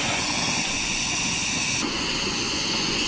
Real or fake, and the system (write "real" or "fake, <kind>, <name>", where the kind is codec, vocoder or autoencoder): fake, vocoder, Vocos